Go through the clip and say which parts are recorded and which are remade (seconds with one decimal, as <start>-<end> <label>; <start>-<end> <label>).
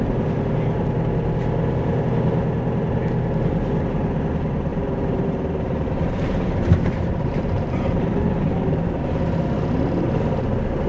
0.0-4.7 recorded; 4.7-9.0 remade; 9.0-10.9 recorded